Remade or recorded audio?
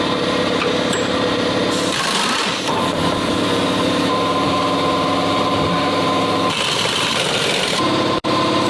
remade